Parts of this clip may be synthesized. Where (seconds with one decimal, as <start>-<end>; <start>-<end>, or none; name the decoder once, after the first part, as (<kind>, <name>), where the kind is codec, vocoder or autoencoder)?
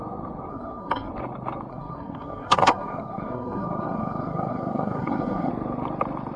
0.5-1.1 (codec, SNAC); 1.7-5.5